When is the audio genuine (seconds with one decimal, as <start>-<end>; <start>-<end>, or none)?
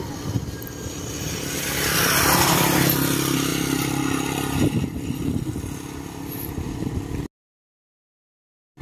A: 0.0-8.8